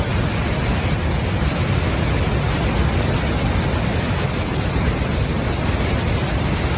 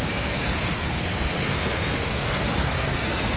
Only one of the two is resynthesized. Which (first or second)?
second